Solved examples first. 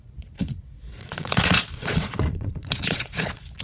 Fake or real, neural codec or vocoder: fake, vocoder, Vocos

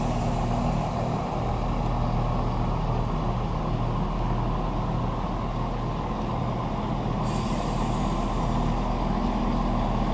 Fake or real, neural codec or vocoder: real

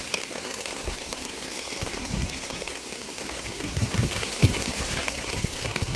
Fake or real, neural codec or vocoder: fake, codec, SNAC